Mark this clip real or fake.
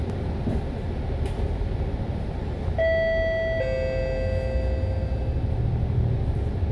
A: real